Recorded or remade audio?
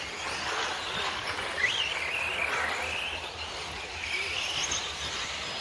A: recorded